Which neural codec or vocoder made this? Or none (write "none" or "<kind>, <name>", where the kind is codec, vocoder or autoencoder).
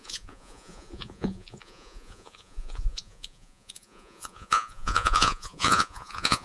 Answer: vocoder, Vocos